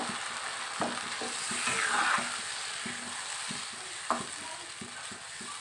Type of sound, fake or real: real